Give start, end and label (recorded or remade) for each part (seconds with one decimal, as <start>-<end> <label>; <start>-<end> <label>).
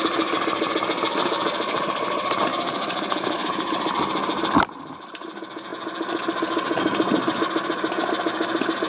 0.0-8.9 recorded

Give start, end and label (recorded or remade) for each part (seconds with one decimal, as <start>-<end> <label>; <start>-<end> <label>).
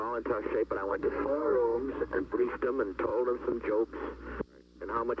0.0-0.9 recorded; 0.9-2.6 remade; 2.6-5.2 recorded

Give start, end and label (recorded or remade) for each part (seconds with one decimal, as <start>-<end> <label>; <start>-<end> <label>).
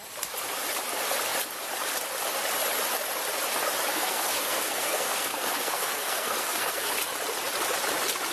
0.0-3.9 recorded; 3.9-6.9 remade; 6.9-8.3 recorded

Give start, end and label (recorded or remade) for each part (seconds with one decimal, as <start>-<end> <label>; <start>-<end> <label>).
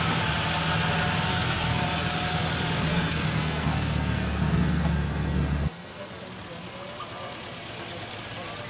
0.0-1.3 recorded; 1.3-1.8 remade; 1.8-2.9 recorded; 2.9-6.1 remade; 6.1-8.7 recorded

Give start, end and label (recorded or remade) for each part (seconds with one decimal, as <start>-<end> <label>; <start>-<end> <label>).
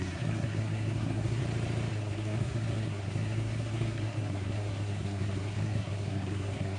0.0-1.4 remade; 1.4-1.9 recorded; 1.9-6.8 remade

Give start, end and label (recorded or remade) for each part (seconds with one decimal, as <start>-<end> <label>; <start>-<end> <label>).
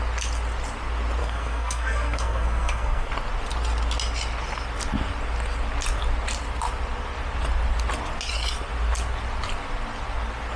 0.0-1.2 recorded; 1.2-3.1 remade; 3.1-10.6 recorded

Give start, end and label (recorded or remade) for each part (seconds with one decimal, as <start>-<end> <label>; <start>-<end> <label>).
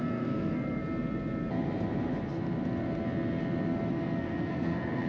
0.0-0.8 remade; 0.8-3.9 recorded; 3.9-5.1 remade